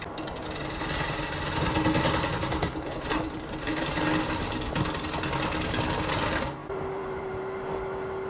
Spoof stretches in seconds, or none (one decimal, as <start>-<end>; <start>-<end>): 2.6-4.1; 6.6-7.4